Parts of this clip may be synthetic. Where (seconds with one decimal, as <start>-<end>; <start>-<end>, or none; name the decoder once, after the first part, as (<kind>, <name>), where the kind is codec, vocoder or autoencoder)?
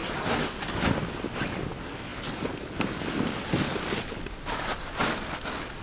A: none